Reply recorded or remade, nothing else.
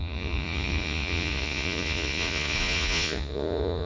remade